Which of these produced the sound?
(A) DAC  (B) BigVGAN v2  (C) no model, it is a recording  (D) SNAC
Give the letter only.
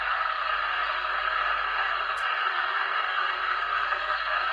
D